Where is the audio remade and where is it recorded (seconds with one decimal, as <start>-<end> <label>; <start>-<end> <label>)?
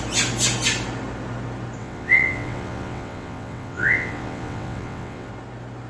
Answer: 0.0-1.8 recorded; 1.8-5.3 remade; 5.3-5.9 recorded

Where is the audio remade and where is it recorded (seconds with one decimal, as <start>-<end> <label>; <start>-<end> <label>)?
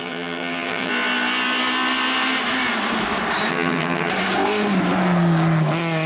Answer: 0.0-0.9 remade; 0.9-3.5 recorded; 3.5-4.1 remade; 4.1-6.1 recorded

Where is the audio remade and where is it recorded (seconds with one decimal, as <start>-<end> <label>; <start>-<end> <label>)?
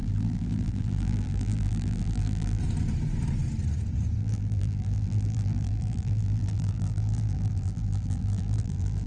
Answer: 0.0-2.6 remade; 2.6-4.2 recorded; 4.2-9.1 remade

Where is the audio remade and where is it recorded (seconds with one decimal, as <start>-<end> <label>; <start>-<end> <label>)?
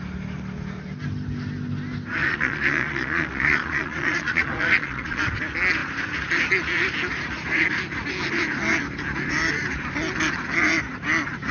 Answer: 0.0-2.2 recorded; 2.2-5.2 remade; 5.2-11.5 recorded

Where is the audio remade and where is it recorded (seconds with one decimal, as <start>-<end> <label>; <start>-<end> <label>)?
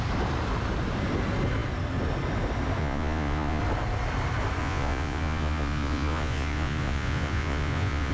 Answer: 0.0-2.8 recorded; 2.8-3.6 remade; 3.6-4.6 recorded; 4.6-8.1 remade